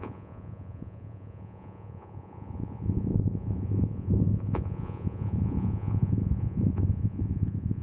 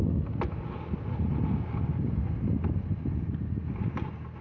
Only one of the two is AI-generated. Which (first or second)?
first